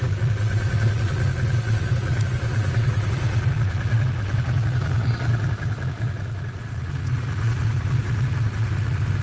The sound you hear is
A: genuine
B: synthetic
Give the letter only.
B